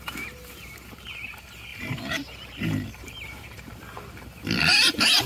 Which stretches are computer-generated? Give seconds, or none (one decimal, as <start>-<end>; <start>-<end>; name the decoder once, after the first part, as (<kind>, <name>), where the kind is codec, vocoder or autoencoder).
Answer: 1.7-5.3 (vocoder, BigVGAN v2)